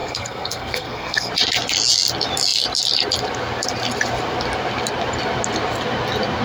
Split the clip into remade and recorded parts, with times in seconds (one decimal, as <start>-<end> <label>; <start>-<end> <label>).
0.0-1.3 remade; 1.3-6.4 recorded